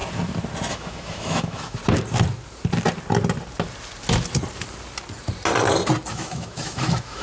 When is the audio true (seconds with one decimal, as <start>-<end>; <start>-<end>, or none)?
0.0-0.7; 1.8-6.1